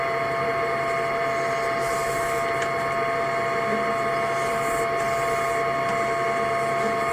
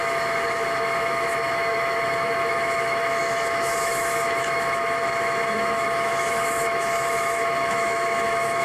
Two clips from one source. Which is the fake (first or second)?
second